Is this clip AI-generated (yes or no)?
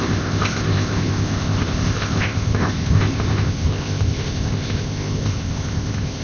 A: yes